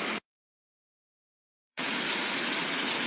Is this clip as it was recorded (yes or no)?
no